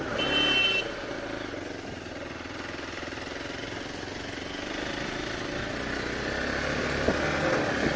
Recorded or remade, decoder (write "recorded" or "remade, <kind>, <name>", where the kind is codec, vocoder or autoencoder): recorded